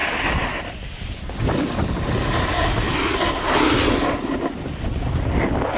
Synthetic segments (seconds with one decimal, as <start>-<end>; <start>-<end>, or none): 0.0-1.7; 2.9-4.9